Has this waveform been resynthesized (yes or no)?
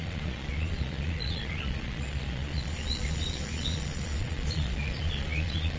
yes